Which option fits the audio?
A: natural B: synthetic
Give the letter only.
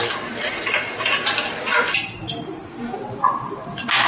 A